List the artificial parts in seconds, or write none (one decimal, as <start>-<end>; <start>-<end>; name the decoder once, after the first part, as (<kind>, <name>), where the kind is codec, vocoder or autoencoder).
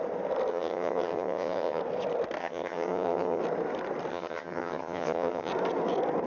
0.5-1.8 (vocoder, HiFi-GAN); 2.4-3.4; 4.1-5.5